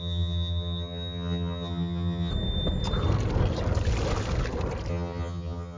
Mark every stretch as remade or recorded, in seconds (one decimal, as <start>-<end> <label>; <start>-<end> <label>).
0.0-2.3 remade; 2.3-4.9 recorded; 4.9-5.8 remade